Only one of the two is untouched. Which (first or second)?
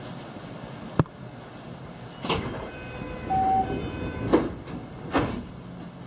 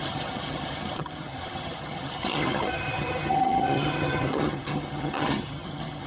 first